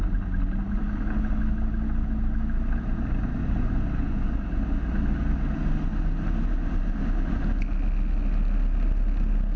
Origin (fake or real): real